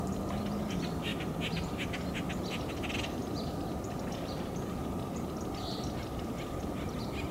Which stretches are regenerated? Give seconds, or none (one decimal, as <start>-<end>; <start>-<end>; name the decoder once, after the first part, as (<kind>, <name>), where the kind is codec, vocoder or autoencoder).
none